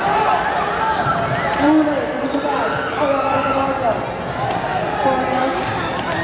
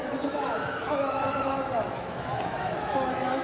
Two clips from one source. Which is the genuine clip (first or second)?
first